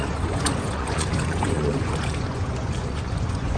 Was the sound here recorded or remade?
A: remade